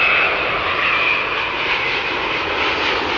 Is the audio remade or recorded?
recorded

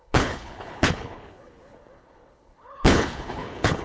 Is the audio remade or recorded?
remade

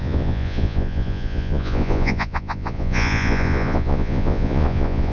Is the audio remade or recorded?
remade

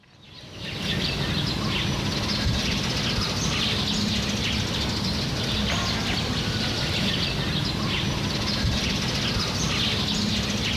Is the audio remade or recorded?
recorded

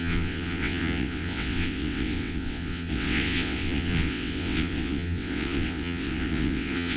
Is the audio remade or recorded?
remade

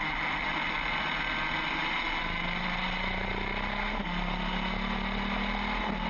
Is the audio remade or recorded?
recorded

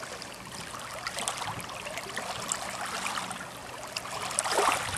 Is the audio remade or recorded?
recorded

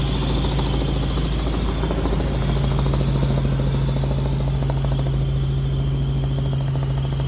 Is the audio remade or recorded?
recorded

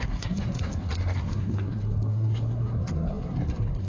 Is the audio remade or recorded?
remade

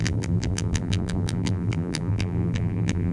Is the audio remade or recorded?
remade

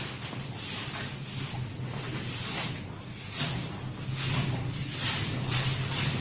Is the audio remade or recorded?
recorded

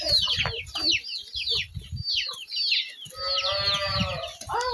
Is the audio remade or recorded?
recorded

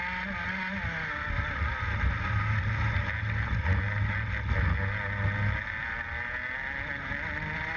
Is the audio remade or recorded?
recorded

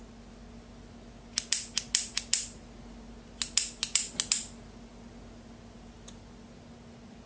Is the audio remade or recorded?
recorded